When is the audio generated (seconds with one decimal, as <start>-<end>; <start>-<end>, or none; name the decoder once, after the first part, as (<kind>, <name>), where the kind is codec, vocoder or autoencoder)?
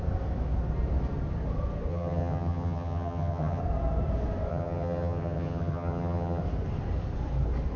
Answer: 1.9-3.6 (vocoder, HiFi-GAN); 4.5-6.4